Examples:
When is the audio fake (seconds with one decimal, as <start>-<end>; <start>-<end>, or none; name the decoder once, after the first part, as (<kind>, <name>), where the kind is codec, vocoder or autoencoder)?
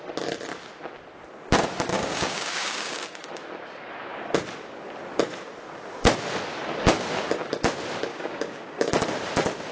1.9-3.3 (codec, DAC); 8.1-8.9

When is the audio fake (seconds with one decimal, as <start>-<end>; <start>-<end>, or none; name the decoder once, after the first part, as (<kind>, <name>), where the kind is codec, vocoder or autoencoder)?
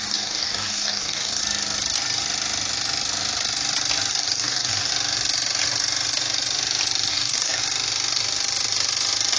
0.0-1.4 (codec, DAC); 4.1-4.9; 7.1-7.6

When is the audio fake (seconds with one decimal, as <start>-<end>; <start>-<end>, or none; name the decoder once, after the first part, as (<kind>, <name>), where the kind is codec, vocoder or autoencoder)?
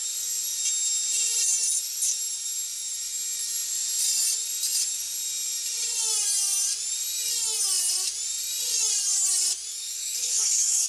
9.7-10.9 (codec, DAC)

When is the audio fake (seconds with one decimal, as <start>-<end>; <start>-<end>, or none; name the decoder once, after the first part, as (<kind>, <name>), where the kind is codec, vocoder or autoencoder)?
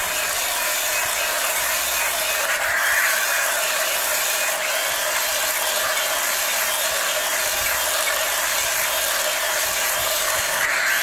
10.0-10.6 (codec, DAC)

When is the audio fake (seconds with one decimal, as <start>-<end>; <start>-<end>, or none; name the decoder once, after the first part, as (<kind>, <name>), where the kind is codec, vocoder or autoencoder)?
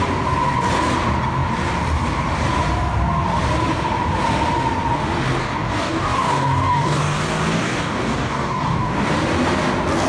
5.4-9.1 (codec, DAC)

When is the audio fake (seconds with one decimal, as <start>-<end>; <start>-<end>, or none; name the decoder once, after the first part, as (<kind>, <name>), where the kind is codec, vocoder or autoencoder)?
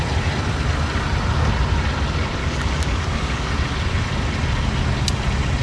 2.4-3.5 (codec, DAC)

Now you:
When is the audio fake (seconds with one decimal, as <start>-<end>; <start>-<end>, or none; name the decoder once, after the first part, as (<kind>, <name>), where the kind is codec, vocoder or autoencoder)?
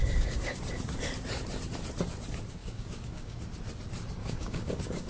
0.0-0.6 (codec, DAC); 2.6-3.4; 4.2-5.1